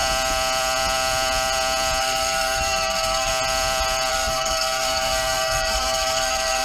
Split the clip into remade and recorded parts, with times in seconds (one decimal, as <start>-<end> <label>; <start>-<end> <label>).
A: 0.0-2.0 recorded; 2.0-3.3 remade; 3.3-4.1 recorded; 4.1-6.6 remade